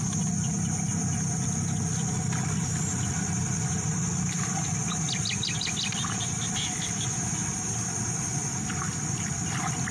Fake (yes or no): no